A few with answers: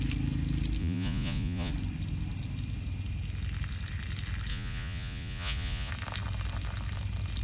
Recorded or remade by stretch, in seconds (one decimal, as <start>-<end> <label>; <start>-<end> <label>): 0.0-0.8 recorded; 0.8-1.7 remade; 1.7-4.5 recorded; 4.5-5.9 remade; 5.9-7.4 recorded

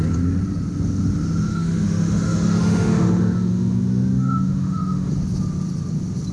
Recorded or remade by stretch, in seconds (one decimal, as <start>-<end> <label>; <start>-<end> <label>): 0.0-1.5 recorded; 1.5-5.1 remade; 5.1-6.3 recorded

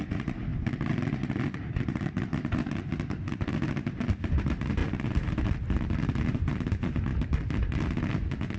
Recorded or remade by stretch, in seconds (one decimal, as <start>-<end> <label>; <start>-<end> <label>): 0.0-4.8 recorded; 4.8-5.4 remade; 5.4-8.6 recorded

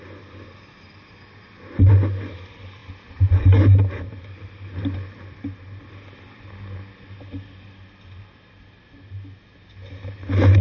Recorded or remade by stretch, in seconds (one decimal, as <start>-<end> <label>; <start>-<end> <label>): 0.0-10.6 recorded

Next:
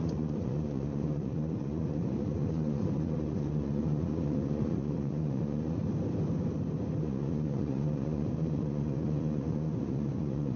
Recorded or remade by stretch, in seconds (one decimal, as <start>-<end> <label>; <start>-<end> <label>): 0.0-5.8 remade; 5.8-7.0 recorded; 7.0-10.6 remade